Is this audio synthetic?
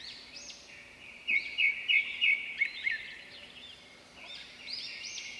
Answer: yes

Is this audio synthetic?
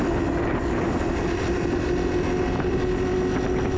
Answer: no